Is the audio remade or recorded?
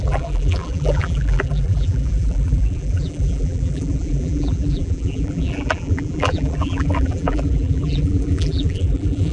remade